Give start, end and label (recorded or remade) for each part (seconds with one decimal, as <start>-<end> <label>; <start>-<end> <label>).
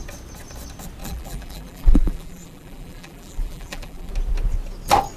0.0-1.0 recorded; 1.0-4.1 remade; 4.1-5.2 recorded